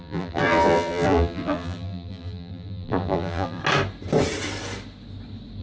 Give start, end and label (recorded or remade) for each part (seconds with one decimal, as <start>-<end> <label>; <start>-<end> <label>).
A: 0.0-3.6 remade; 3.6-5.6 recorded